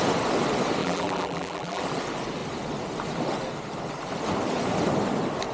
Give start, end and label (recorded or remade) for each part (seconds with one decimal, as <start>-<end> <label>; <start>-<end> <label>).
0.0-0.8 recorded; 0.8-1.8 remade; 1.8-5.5 recorded